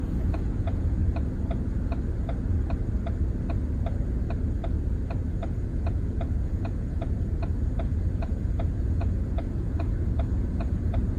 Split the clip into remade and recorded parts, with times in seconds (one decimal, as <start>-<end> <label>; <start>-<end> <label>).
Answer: 0.0-1.0 remade; 1.0-5.3 recorded; 5.3-11.2 remade